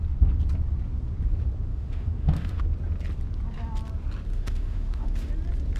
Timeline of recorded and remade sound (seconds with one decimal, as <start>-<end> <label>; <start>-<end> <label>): 0.0-1.7 recorded; 1.7-2.6 remade; 2.6-4.3 recorded; 4.3-5.3 remade; 5.3-5.8 recorded